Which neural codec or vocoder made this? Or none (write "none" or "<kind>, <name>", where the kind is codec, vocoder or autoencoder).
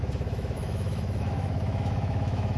autoencoder, DAC-VAE